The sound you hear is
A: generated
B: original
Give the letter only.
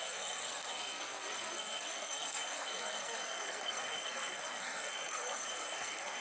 A